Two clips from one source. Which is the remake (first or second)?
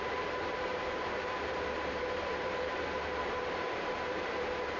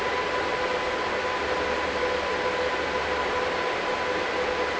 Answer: first